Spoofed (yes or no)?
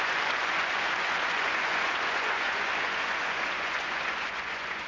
yes